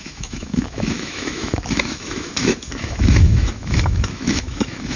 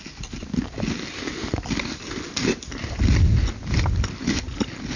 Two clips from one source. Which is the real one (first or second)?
second